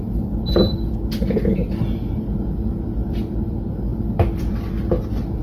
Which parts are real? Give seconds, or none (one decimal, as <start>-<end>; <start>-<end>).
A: 0.0-5.4

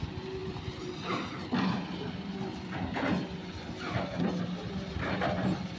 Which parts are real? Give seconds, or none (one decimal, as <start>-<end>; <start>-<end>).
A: 0.0-0.4; 1.1-5.8

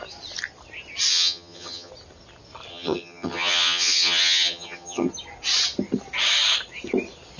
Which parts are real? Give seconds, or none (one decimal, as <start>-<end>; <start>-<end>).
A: 0.0-1.1; 1.9-2.7; 5.1-7.4

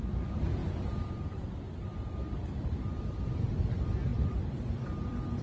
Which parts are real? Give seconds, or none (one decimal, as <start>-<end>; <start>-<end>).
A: 0.0-2.3; 3.4-4.1